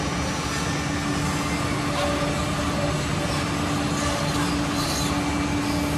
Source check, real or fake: real